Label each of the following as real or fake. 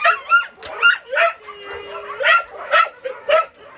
real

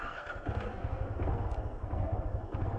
fake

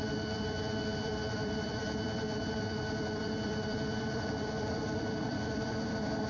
fake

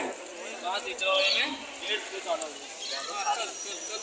real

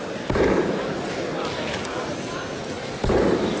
real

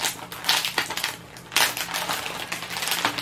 real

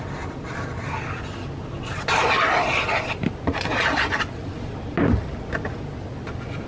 real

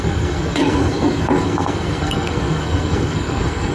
fake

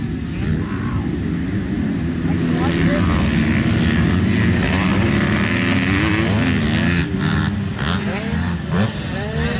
real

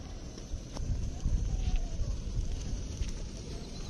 fake